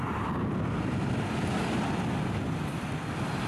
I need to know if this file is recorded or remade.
remade